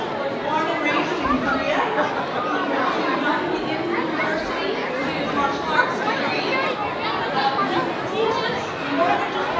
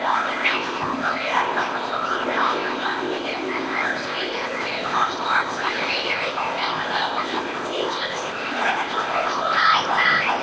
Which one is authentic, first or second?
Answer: first